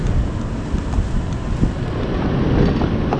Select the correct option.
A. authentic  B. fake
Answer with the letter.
A